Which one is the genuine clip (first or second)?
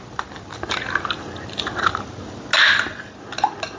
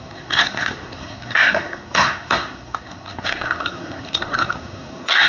first